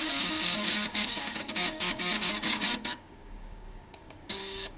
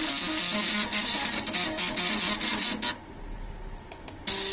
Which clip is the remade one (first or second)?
first